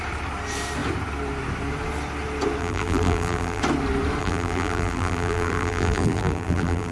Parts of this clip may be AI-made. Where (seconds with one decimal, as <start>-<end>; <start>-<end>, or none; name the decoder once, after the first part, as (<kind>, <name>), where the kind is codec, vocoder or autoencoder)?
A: 2.6-3.6 (vocoder, BigVGAN v2); 4.2-6.9